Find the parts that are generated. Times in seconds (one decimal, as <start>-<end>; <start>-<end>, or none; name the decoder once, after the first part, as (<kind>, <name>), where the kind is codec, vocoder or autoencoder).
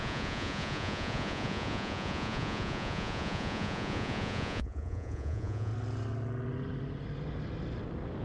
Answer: 0.0-5.7 (vocoder, Vocos)